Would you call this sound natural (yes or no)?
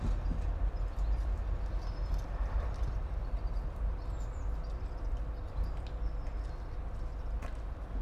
yes